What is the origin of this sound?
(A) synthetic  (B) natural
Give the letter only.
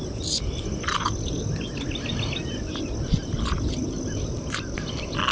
B